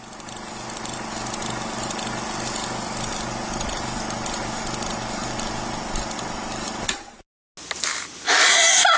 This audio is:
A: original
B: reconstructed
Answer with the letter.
A